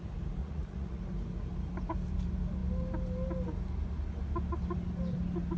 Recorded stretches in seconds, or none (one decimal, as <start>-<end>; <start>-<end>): 0.0-0.4; 1.0-5.6